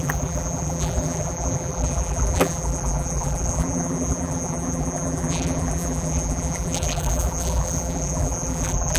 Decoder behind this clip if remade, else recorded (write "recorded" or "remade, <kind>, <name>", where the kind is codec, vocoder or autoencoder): remade, vocoder, BigVGAN v2